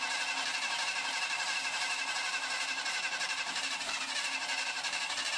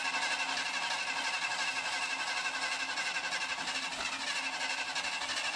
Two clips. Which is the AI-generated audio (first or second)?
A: first